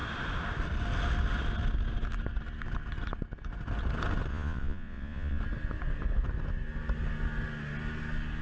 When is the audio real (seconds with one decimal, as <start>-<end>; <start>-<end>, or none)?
0.0-4.3; 5.4-8.4